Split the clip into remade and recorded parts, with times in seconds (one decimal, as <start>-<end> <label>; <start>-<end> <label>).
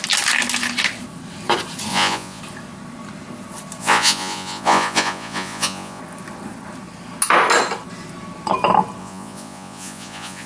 0.0-1.9 recorded; 1.9-2.4 remade; 2.4-3.8 recorded; 3.8-6.0 remade; 6.0-9.0 recorded; 9.0-10.5 remade